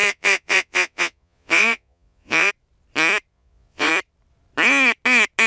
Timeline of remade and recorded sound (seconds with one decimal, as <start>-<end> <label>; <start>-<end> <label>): 0.0-2.5 remade; 2.5-3.3 recorded; 3.3-3.9 remade; 3.9-5.5 recorded